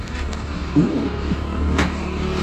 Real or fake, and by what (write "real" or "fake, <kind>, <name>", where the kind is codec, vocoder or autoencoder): fake, codec, DAC